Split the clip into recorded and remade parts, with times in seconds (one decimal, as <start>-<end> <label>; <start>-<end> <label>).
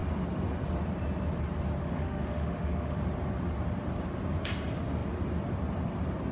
0.0-1.8 recorded; 1.8-3.0 remade; 3.0-6.3 recorded